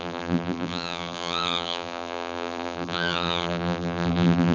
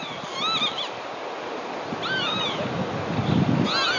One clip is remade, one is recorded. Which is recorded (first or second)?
second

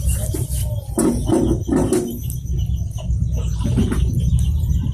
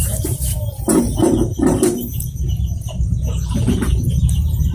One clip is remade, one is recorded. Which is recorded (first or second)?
first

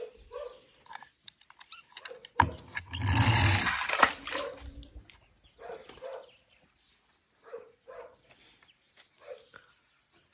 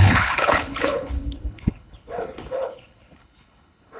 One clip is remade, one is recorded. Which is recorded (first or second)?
first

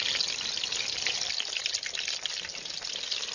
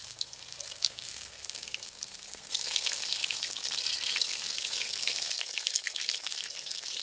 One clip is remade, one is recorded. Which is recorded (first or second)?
first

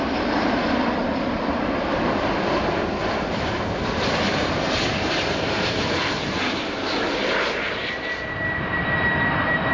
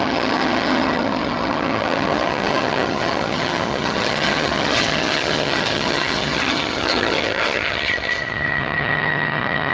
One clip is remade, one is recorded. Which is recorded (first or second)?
first